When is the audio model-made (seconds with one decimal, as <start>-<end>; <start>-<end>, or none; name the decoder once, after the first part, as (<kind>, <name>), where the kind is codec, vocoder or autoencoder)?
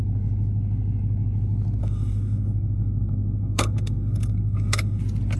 1.8-5.0 (codec, SNAC)